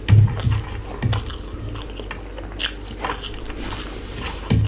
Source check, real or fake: real